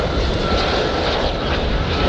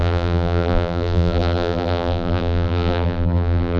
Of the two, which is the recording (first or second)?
first